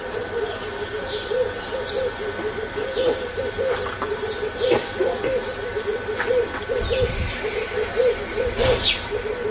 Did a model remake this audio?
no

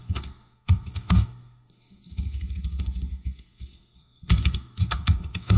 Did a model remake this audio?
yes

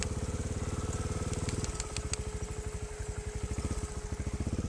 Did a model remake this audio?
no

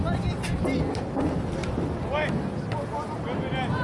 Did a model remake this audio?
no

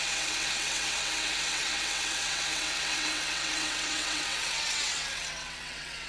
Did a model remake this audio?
yes